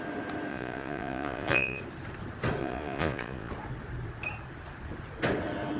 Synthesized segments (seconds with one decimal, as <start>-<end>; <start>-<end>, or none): 0.5-1.8; 2.6-3.5